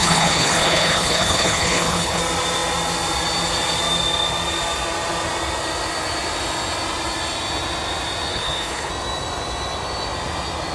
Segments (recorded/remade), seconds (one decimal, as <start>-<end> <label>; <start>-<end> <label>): 0.0-2.2 remade; 2.2-8.3 recorded; 8.3-8.9 remade; 8.9-10.7 recorded